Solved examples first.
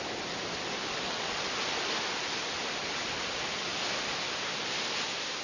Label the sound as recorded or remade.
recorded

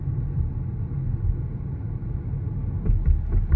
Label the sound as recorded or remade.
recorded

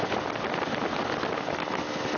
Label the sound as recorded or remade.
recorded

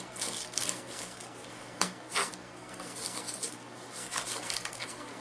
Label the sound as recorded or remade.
remade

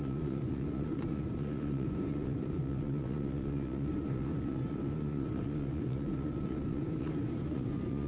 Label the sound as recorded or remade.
remade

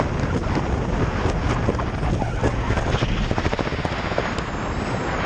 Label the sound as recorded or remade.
recorded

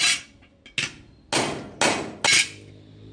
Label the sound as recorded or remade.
recorded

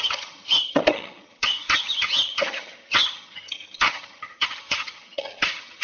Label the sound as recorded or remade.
remade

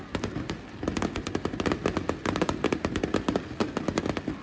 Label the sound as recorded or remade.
recorded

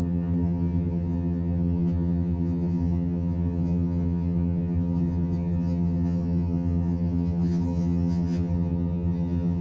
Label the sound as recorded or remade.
remade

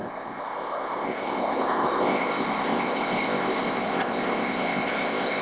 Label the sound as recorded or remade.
remade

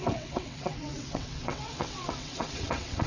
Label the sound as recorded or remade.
remade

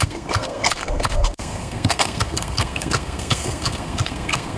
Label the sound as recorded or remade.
remade